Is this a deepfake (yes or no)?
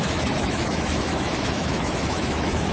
yes